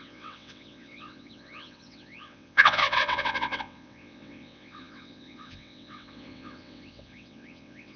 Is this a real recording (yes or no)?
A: no